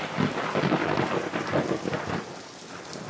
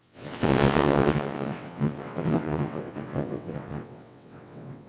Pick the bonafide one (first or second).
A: first